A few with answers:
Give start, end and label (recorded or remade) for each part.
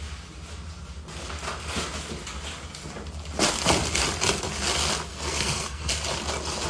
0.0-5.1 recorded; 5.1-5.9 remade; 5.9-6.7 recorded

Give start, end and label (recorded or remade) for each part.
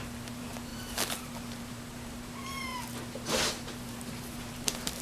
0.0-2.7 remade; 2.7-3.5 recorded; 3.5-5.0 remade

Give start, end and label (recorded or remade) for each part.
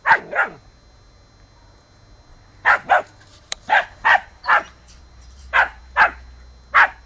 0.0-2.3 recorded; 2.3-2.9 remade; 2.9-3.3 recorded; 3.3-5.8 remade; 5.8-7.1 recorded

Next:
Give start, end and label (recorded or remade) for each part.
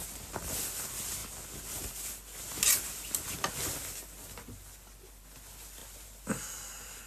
0.0-7.1 recorded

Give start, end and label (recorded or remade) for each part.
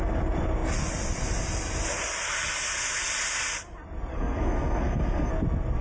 0.0-4.1 recorded; 4.1-5.3 remade; 5.3-5.8 recorded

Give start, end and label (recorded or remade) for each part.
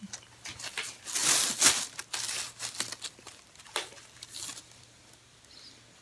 0.0-6.0 recorded